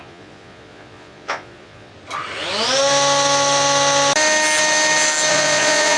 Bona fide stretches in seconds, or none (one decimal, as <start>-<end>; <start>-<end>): 1.9-5.3